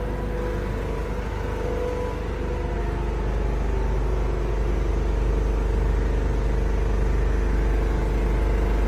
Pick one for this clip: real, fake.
real